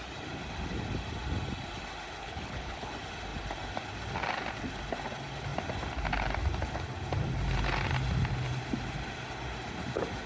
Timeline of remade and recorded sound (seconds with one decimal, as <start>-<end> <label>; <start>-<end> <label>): 0.0-2.2 recorded; 2.2-2.9 remade; 2.9-10.3 recorded